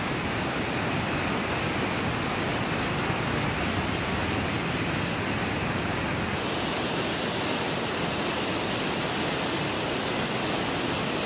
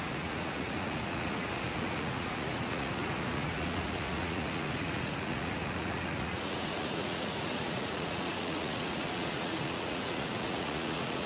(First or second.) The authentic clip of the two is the first